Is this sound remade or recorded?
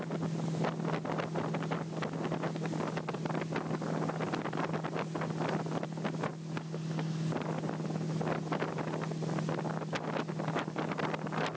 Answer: recorded